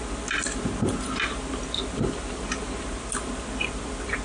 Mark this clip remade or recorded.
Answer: recorded